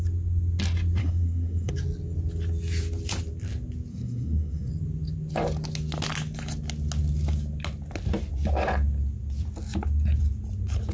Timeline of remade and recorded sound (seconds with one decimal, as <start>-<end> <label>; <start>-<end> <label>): 0.0-1.0 recorded; 1.0-1.7 remade; 1.7-3.9 recorded; 3.9-4.7 remade; 4.7-10.9 recorded